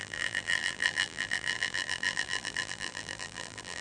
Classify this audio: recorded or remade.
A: remade